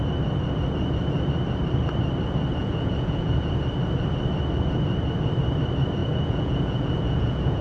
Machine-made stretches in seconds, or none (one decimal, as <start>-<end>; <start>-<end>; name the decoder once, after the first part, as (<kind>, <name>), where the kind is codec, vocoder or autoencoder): 2.6-3.5 (vocoder, Vocos); 6.0-7.6